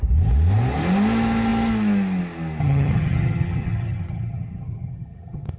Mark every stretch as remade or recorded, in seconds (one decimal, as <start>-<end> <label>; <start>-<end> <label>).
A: 0.0-2.6 recorded; 2.6-5.6 remade